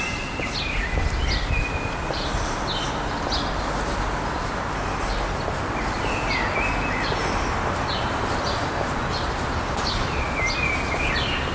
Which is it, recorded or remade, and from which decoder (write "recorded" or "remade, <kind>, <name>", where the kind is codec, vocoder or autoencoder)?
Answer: recorded